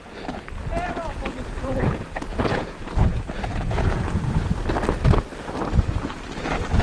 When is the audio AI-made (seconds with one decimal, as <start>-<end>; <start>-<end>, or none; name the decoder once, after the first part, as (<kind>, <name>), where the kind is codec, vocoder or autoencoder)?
1.6-4.2 (vocoder, Vocos)